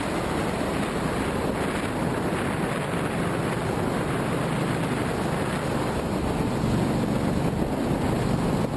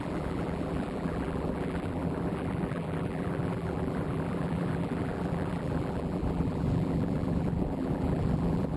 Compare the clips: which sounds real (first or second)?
first